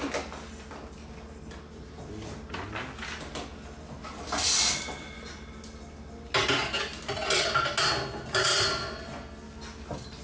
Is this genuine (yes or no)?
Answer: yes